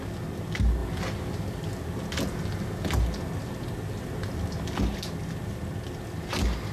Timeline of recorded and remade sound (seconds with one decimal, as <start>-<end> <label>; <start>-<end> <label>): 0.0-6.7 recorded